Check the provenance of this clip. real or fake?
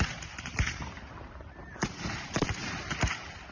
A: fake